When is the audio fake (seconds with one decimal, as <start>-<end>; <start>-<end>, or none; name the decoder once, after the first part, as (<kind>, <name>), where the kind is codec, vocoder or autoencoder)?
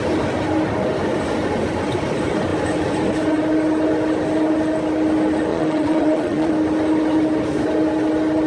5.5-6.5 (vocoder, Vocos)